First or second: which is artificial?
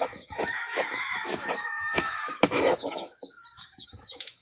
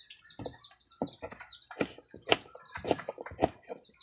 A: first